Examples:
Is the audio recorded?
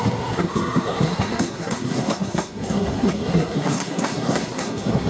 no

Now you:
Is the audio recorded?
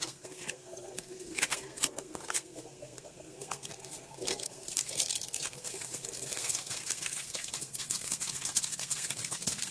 no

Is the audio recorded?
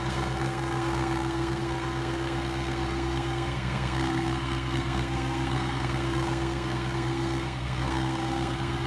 no